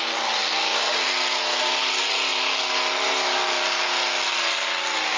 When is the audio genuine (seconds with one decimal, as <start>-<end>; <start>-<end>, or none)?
0.0-5.2